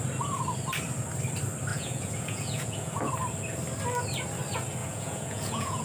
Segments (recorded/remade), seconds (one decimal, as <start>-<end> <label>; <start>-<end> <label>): 0.0-1.7 recorded; 1.7-3.1 remade; 3.1-4.8 recorded; 4.8-5.8 remade